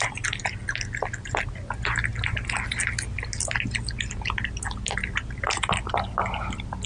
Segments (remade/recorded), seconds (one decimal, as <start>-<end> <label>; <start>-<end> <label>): 0.0-6.9 recorded